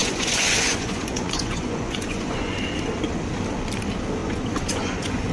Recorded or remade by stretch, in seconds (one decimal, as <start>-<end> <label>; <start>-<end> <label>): 0.0-2.6 remade; 2.6-4.2 recorded; 4.2-5.3 remade